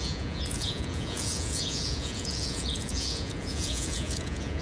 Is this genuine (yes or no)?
no